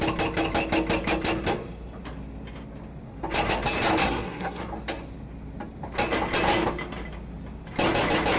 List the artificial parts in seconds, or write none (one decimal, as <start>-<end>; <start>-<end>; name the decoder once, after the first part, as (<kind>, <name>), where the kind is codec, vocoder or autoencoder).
4.0-4.6 (codec, SNAC)